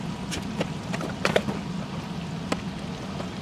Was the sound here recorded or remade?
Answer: recorded